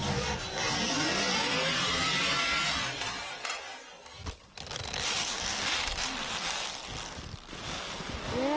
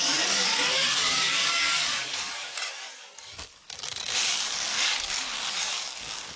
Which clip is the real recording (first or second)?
first